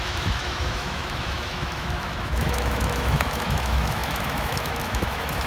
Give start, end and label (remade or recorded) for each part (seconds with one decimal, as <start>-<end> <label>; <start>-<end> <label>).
0.0-5.5 remade